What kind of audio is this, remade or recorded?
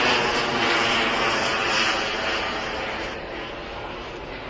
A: recorded